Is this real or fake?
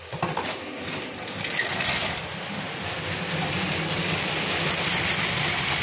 real